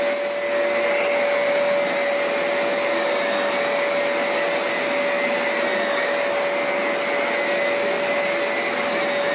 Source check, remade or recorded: recorded